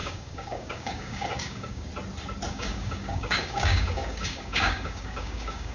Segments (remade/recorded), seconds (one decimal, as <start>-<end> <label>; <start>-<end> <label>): 0.0-1.9 remade; 1.9-2.5 recorded; 2.5-5.7 remade